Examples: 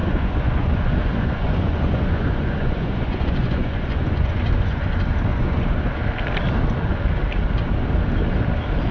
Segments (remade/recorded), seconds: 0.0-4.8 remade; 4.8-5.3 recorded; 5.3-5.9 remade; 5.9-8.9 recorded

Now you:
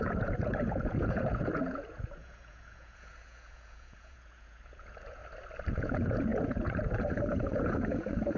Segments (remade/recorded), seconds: 0.0-5.2 remade; 5.2-5.7 recorded; 5.7-8.4 remade

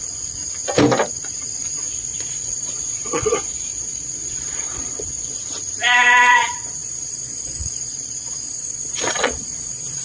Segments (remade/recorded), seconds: 0.0-0.4 remade; 0.4-1.1 recorded; 1.1-5.4 remade; 5.4-6.3 recorded; 6.3-10.0 remade

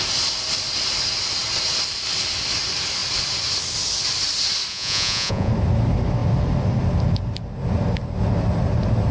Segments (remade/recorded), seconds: 0.0-4.7 recorded; 4.7-5.5 remade; 5.5-9.1 recorded

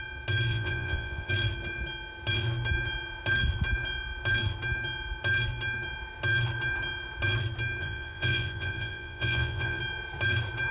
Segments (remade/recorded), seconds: 0.0-0.5 recorded; 0.5-1.3 remade; 1.3-7.8 recorded; 7.8-9.8 remade; 9.8-10.7 recorded

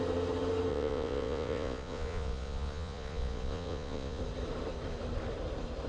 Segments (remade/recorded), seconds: 0.0-0.7 recorded; 0.7-4.2 remade; 4.2-5.9 recorded

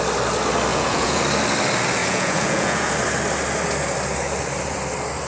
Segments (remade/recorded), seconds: 0.0-0.7 recorded; 0.7-1.2 remade; 1.2-2.0 recorded; 2.0-2.9 remade; 2.9-5.3 recorded

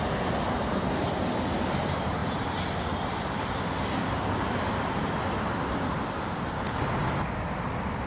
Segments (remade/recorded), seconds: 0.0-8.1 recorded